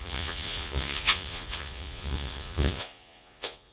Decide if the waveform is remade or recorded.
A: remade